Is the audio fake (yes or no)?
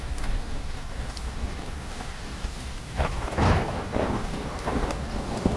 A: yes